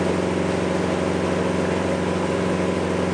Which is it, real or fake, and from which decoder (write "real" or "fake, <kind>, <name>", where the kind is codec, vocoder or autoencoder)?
real